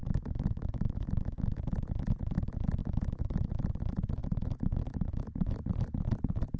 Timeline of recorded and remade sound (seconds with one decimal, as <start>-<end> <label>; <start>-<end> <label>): 0.0-1.6 remade; 1.6-2.8 recorded; 2.8-3.5 remade; 3.5-4.2 recorded; 4.2-5.5 remade; 5.5-6.6 recorded